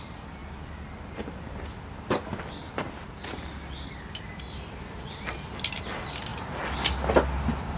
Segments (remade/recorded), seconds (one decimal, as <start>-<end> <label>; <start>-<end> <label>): 0.0-7.8 recorded